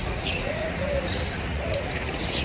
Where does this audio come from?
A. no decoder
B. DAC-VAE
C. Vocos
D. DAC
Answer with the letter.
C